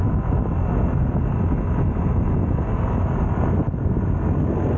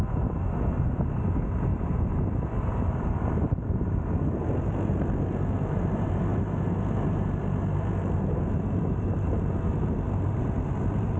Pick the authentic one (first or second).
first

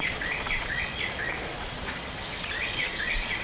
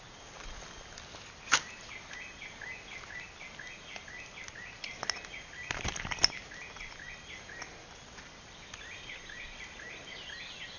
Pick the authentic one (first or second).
second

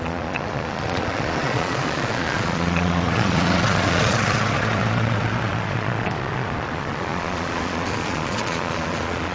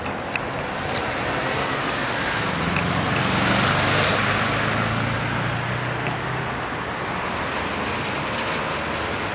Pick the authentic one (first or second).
second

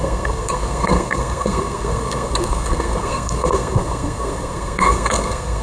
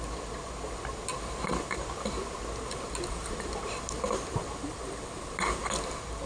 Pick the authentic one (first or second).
second